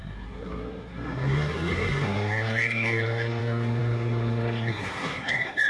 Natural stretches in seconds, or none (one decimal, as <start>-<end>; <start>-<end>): none